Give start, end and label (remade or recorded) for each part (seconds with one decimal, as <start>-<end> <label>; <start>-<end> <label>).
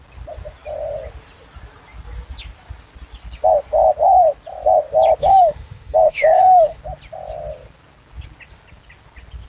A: 0.0-5.2 recorded; 5.2-6.8 remade; 6.8-9.5 recorded